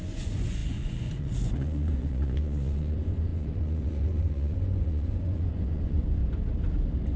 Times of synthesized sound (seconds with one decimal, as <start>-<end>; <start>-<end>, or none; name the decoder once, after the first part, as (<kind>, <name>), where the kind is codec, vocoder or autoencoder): 0.0-6.2 (vocoder, Vocos)